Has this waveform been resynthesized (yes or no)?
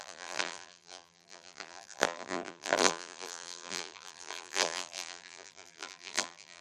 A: yes